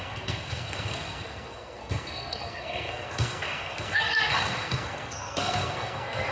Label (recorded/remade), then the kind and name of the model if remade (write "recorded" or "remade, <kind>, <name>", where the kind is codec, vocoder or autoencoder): remade, codec, SNAC